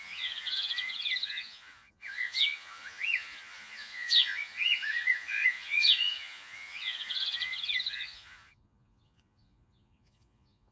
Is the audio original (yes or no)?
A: no